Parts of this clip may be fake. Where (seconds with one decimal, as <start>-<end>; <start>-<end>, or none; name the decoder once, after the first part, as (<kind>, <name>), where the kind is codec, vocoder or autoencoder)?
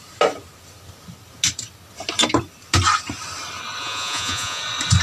3.8-4.6 (vocoder, Vocos)